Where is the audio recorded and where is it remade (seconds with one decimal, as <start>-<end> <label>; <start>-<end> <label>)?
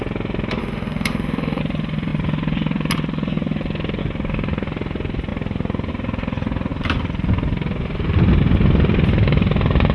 0.0-0.6 recorded; 0.6-1.6 remade; 1.6-9.9 recorded